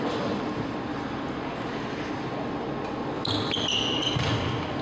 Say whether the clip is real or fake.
real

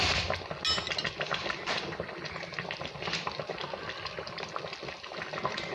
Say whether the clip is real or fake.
real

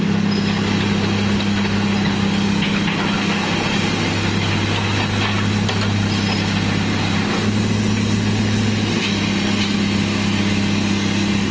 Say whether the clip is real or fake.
real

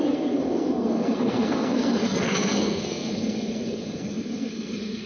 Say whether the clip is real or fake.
fake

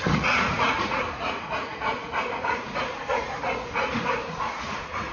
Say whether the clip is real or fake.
fake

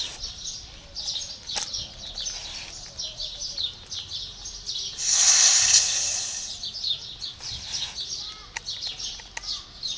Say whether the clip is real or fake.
real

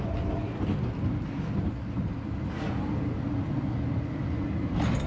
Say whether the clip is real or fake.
real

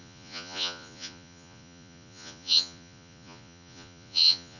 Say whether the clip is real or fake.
fake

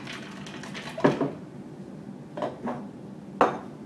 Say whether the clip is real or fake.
real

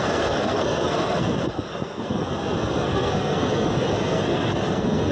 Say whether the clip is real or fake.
fake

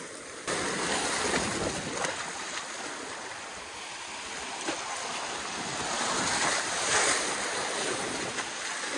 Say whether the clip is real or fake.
real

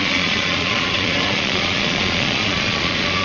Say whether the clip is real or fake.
fake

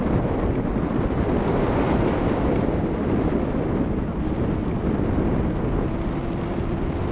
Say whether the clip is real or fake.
real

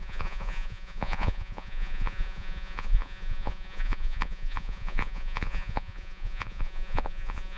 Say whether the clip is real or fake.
fake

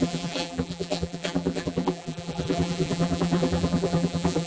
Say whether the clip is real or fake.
fake